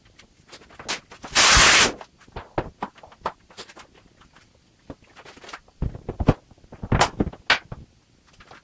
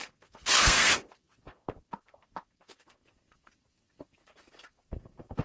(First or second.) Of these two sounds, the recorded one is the first